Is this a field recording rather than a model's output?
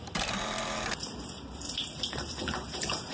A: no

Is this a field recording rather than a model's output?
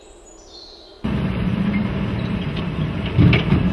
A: no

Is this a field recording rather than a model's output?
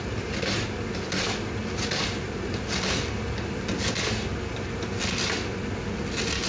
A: yes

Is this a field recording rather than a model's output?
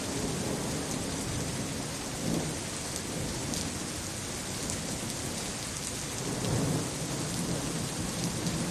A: yes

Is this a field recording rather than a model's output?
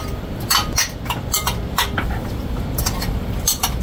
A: no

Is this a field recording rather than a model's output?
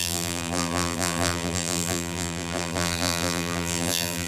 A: no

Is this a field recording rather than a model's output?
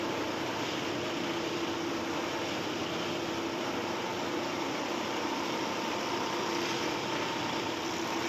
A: no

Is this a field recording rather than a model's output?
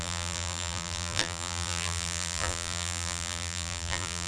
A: no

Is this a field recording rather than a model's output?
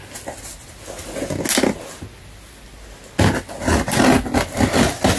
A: yes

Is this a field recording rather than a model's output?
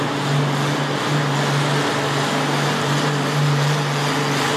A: yes